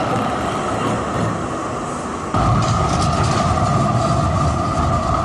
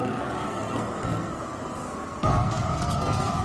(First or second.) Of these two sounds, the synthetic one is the second